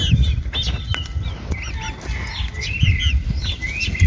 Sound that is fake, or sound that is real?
real